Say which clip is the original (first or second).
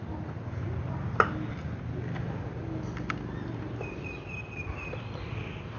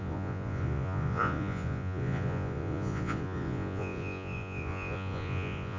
first